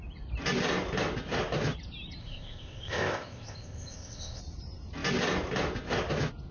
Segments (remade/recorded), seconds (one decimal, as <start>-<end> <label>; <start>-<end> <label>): 0.0-2.2 recorded; 2.2-4.4 remade; 4.4-6.5 recorded